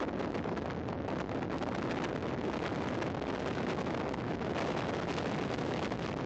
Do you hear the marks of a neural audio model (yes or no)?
no